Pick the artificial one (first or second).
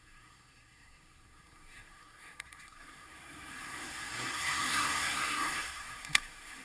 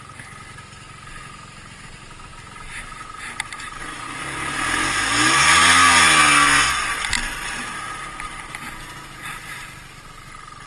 first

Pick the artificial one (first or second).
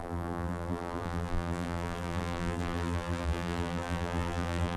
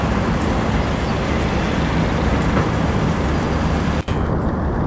first